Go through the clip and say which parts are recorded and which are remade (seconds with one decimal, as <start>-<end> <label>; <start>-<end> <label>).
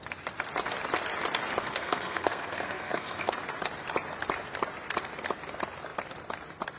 0.0-1.6 recorded; 1.6-3.3 remade; 3.3-6.8 recorded